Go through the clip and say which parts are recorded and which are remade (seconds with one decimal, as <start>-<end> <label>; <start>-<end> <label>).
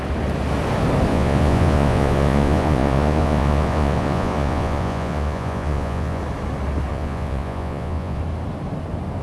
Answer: 0.0-1.1 recorded; 1.1-6.2 remade; 6.2-6.9 recorded; 6.9-8.2 remade; 8.2-9.2 recorded